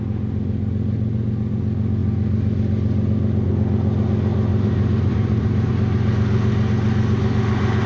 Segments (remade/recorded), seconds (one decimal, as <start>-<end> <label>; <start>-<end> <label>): 0.0-4.5 recorded; 4.5-5.7 remade; 5.7-7.9 recorded